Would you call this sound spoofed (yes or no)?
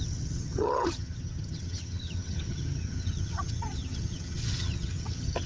yes